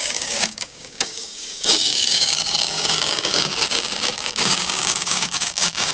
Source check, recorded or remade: remade